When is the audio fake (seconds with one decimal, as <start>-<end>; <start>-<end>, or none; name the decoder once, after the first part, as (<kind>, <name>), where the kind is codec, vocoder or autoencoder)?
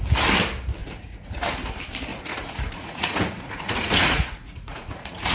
0.8-1.4 (vocoder, Vocos); 2.1-5.3